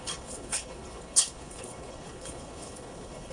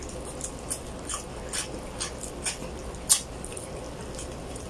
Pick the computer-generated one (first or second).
first